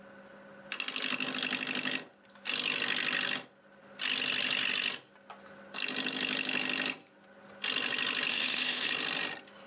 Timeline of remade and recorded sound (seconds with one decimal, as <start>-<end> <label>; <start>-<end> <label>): 0.0-8.3 recorded; 8.3-8.9 remade; 8.9-9.7 recorded